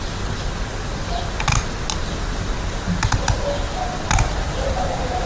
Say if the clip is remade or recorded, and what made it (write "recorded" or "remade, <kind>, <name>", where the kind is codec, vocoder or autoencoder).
recorded